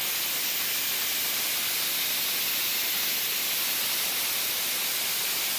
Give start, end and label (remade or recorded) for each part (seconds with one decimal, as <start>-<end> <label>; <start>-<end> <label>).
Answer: 0.0-3.1 recorded; 3.1-3.6 remade; 3.6-5.6 recorded